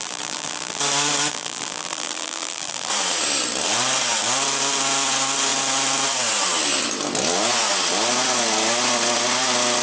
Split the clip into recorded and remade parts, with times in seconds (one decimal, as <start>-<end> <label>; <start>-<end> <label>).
0.0-0.8 remade; 0.8-1.3 recorded; 1.3-2.9 remade; 2.9-9.8 recorded